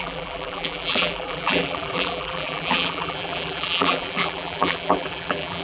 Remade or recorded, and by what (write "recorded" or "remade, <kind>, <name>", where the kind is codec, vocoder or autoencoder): remade, vocoder, BigVGAN v2